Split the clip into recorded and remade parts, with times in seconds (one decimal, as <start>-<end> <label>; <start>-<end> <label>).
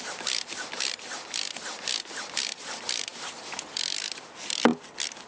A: 0.0-5.3 recorded